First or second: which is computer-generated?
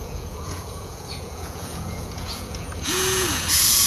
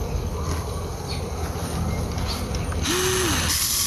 first